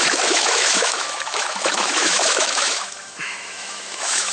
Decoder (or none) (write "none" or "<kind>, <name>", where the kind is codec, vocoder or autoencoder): autoencoder, DAC-VAE